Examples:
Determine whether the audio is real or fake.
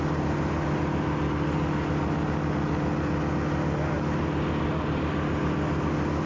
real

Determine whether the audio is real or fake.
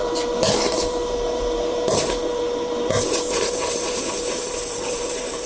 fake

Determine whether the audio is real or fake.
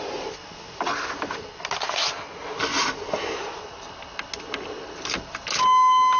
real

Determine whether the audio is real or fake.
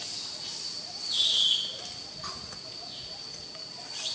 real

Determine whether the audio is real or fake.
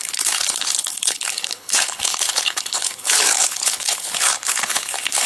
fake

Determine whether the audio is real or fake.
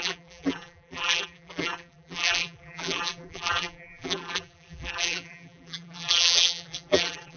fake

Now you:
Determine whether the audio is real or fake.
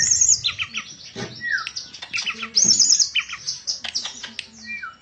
real